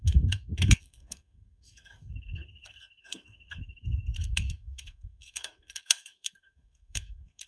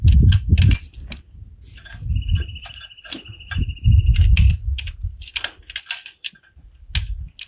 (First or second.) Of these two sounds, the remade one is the first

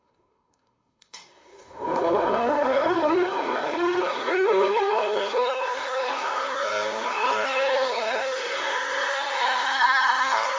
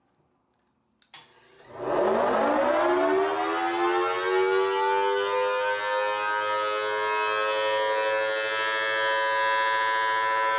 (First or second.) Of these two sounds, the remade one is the first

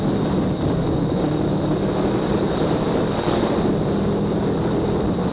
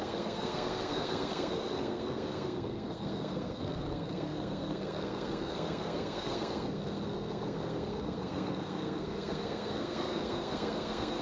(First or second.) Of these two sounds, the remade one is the second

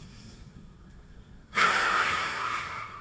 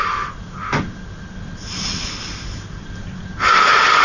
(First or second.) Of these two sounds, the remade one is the first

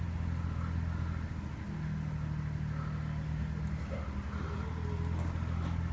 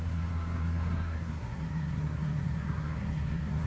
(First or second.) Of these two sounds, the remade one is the second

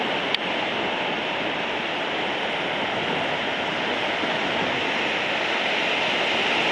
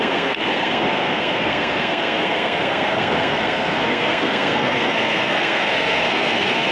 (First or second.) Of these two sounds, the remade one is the second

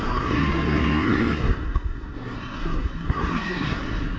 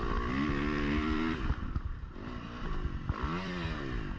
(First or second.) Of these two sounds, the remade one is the first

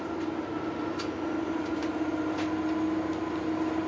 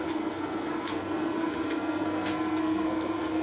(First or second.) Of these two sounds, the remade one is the second